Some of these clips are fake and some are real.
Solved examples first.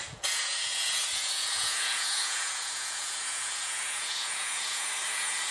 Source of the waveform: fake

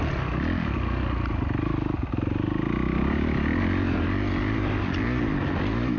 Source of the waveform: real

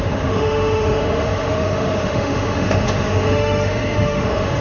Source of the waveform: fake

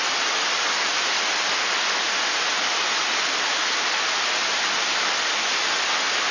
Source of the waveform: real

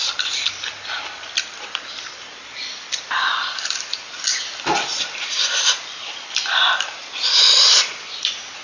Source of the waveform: fake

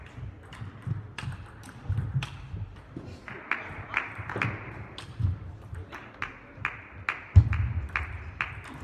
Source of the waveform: real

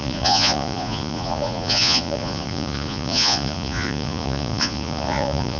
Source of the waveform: fake